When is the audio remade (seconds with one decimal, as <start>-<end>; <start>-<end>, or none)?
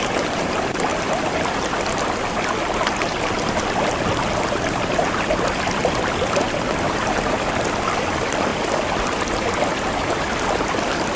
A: none